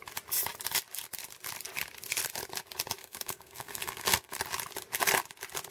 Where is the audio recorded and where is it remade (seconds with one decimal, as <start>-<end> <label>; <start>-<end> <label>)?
0.0-3.0 recorded; 3.0-4.4 remade; 4.4-5.7 recorded